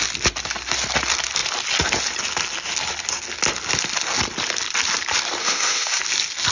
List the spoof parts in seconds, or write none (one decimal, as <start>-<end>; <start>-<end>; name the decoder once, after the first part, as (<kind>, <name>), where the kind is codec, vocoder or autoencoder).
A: 5.4-6.0 (autoencoder, DAC-VAE)